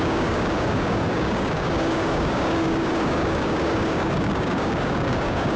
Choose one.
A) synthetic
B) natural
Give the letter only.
A